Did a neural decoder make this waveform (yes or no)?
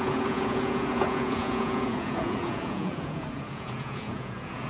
yes